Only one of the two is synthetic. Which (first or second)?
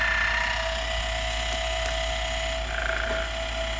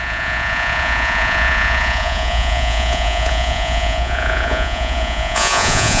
second